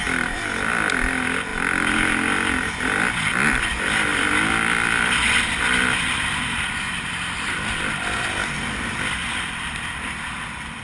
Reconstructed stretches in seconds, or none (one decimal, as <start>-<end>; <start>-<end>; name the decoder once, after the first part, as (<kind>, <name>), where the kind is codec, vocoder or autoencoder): none